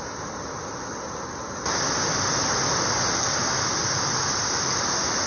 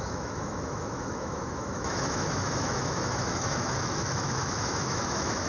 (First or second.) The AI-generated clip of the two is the second